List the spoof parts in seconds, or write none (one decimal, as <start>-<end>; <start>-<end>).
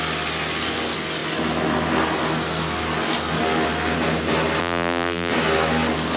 4.6-5.3